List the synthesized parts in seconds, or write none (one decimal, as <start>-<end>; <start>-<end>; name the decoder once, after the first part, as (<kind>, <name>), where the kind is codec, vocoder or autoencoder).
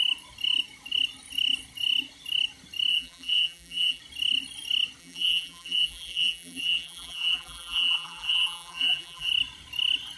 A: 2.9-4.0 (vocoder, BigVGAN v2); 5.0-9.3